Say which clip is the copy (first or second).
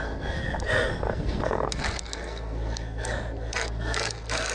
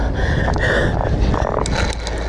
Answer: first